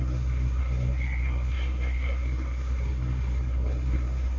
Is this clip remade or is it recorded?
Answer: remade